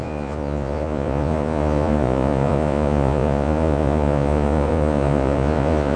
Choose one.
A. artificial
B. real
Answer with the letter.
A